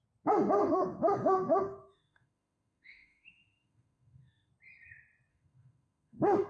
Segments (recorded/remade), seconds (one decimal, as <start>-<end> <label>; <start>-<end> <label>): 0.0-0.6 recorded; 0.6-4.5 remade; 4.5-5.3 recorded; 5.3-6.5 remade